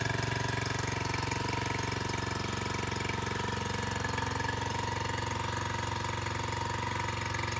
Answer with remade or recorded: recorded